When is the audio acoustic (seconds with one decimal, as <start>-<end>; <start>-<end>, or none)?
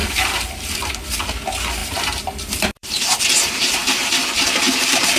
1.0-1.8